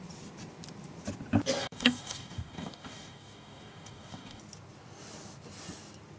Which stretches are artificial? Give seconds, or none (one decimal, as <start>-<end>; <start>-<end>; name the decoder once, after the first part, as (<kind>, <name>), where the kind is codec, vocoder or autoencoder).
1.6-4.4 (codec, DAC)